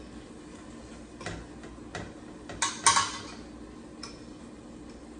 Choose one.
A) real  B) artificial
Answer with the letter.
A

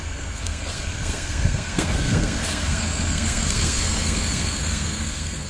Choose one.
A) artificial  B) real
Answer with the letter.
A